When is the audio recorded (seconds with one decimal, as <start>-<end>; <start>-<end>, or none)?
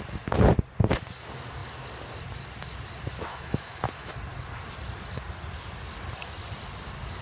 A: 0.0-3.3; 4.1-7.2